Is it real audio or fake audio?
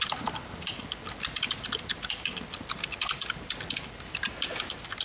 real